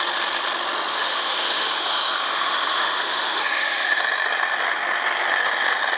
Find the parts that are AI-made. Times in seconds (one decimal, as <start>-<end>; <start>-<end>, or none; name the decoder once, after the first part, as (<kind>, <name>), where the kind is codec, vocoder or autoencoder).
0.9-4.0 (autoencoder, DAC-VAE)